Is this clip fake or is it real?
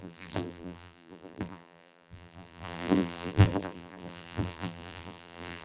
fake